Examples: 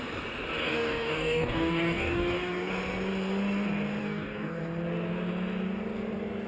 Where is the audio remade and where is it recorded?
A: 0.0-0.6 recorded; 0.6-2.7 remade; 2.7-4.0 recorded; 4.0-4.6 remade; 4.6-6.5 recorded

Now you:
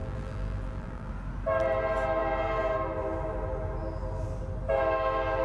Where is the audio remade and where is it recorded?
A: 0.0-1.1 remade; 1.1-5.4 recorded

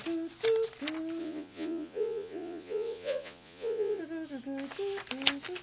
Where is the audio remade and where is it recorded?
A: 0.0-1.2 recorded; 1.2-4.0 remade; 4.0-5.6 recorded

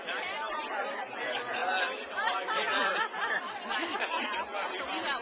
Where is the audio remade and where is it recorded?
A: 0.0-5.2 remade

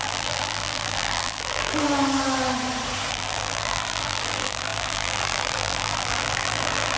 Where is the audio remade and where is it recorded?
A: 0.0-1.8 remade; 1.8-3.1 recorded; 3.1-7.0 remade

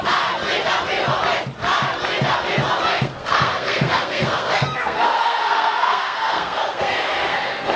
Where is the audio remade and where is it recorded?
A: 0.0-2.9 recorded; 2.9-7.8 remade

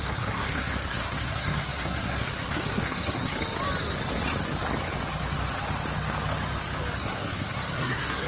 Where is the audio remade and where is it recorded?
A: 0.0-3.3 remade; 3.3-7.0 recorded; 7.0-8.3 remade

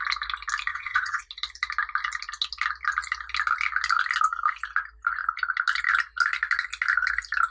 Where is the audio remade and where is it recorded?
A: 0.0-0.7 recorded; 0.7-1.2 remade; 1.2-7.5 recorded